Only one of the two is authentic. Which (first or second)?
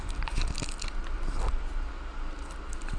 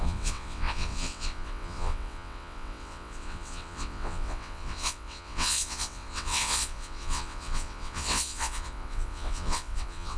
first